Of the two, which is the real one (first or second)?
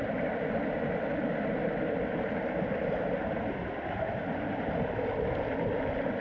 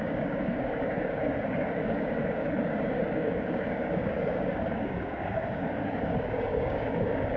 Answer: first